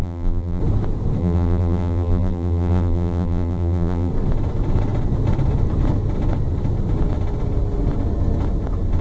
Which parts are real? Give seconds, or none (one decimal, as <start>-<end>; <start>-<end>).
0.6-1.2; 4.1-9.0